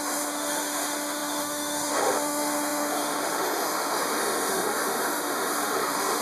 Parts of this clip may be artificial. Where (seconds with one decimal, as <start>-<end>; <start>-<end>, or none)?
0.0-6.2